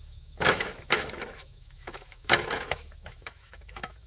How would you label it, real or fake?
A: fake